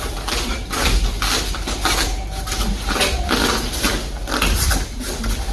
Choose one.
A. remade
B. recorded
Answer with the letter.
B